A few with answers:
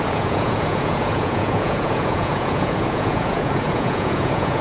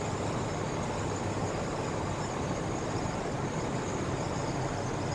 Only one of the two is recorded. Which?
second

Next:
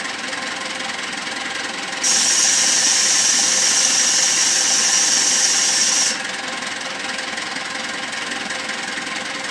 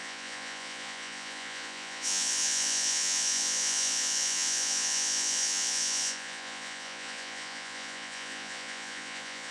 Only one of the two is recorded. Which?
first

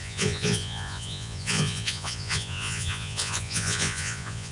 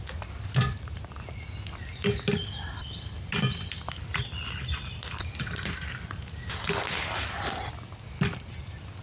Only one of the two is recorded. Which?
second